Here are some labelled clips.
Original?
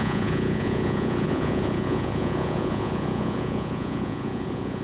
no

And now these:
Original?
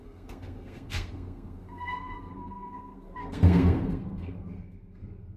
no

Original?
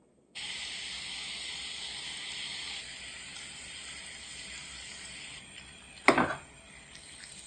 yes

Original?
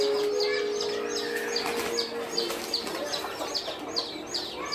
yes